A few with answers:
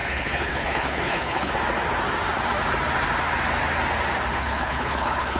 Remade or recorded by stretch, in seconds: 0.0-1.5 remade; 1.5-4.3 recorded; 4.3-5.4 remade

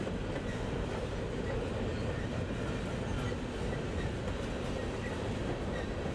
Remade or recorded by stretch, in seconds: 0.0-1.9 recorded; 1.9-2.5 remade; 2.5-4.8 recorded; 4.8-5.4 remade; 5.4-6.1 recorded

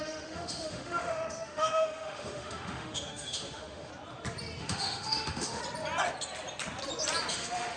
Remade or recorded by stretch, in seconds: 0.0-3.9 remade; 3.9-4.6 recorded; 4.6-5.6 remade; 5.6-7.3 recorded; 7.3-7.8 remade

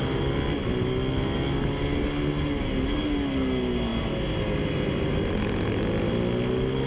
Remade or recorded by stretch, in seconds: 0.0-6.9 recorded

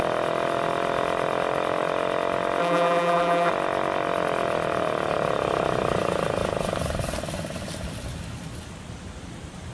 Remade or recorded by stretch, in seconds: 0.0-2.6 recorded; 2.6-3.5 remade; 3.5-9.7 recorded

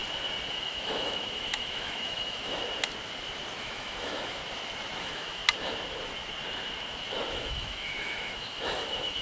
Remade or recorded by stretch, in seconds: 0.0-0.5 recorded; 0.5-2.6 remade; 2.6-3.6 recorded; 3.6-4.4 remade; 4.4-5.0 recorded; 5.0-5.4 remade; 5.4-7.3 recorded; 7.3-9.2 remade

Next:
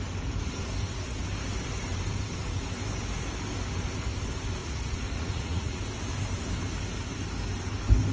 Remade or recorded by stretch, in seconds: 0.0-4.6 recorded; 4.6-5.8 remade; 5.8-8.1 recorded

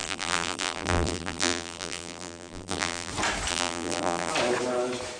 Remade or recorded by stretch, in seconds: 0.0-3.1 remade; 3.1-3.5 recorded; 3.5-4.3 remade; 4.3-5.2 recorded